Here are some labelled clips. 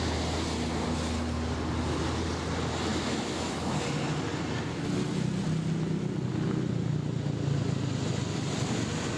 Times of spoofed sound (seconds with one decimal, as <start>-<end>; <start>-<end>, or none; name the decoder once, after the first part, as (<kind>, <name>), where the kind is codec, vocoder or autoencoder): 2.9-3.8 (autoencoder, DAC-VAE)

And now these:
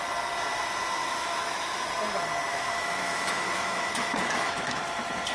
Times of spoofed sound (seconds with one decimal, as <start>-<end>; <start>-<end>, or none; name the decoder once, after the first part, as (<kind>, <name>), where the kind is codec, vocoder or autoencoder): 1.0-1.9 (autoencoder, DAC-VAE); 2.5-4.8

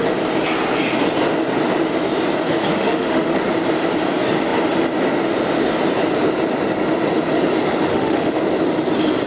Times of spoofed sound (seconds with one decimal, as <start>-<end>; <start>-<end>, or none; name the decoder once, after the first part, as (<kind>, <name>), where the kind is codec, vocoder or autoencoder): 2.7-3.4 (autoencoder, DAC-VAE); 7.9-8.4

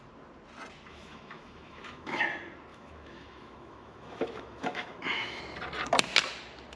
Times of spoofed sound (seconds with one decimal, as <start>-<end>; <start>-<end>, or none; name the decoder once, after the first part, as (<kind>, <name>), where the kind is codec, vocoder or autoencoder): 0.9-2.2 (autoencoder, DAC-VAE); 2.7-5.4

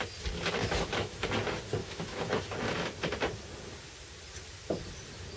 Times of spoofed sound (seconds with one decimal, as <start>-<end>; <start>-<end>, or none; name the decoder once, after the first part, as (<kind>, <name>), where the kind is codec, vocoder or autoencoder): 0.6-1.2 (autoencoder, DAC-VAE); 1.8-2.4